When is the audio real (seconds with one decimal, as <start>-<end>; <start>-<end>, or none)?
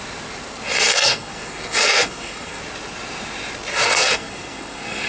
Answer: 0.0-0.9; 2.6-3.7